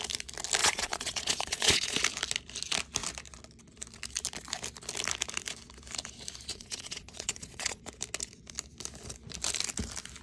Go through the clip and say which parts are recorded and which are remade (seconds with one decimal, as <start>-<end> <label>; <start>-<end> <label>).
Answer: 0.0-0.6 recorded; 0.6-2.0 remade; 2.0-6.5 recorded; 6.5-7.8 remade; 7.8-10.2 recorded